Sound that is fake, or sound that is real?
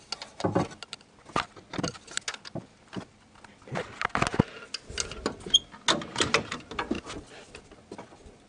real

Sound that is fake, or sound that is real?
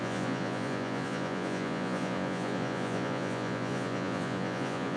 fake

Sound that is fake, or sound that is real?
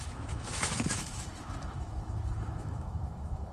fake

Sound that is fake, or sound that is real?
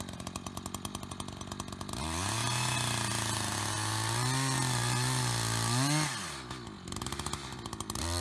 real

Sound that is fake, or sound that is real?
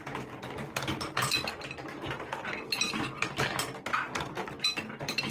real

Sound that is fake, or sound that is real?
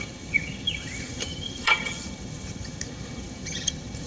fake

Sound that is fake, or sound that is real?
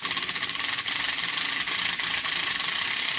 real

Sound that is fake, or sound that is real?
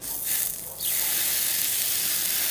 real